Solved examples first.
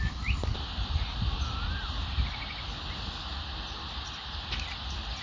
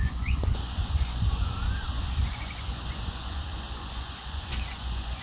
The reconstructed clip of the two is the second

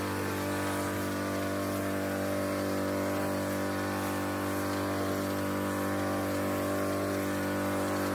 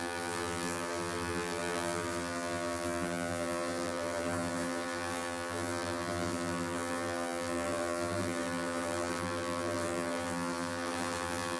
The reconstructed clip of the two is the second